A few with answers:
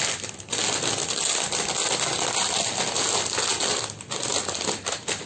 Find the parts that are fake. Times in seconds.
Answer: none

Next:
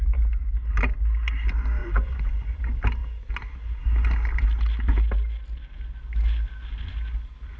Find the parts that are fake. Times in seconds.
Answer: 1.8-2.6 (vocoder, Vocos)

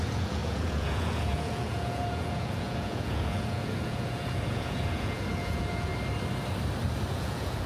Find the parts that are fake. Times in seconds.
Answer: 0.0-5.9 (vocoder, Vocos); 7.1-7.7

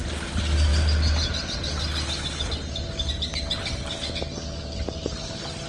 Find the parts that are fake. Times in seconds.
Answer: none

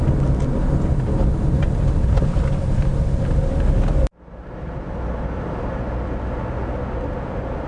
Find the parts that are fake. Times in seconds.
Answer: none